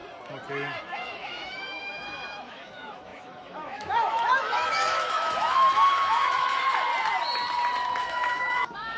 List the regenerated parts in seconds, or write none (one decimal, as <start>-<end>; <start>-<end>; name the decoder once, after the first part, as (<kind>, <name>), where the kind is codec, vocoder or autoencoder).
0.8-6.9 (autoencoder, DAC-VAE); 8.0-9.0